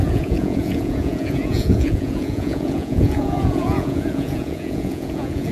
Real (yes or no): no